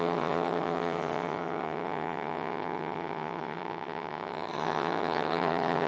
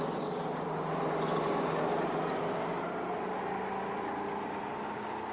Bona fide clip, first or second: second